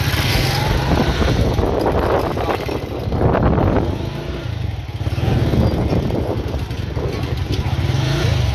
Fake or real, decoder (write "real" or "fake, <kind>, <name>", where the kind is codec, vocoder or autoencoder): real